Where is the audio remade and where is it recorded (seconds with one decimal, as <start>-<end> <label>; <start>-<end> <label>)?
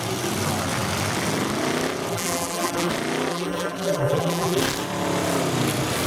0.0-2.1 recorded; 2.1-2.9 remade; 2.9-3.3 recorded; 3.3-4.6 remade; 4.6-6.1 recorded